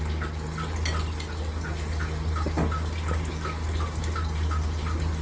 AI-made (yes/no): no